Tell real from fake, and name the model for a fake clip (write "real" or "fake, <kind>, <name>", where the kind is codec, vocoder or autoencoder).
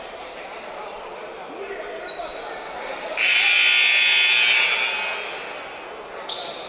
real